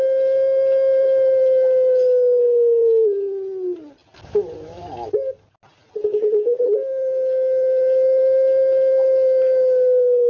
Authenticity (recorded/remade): recorded